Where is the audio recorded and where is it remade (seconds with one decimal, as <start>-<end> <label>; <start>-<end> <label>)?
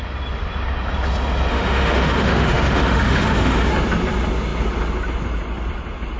0.0-1.5 recorded; 1.5-3.7 remade; 3.7-6.2 recorded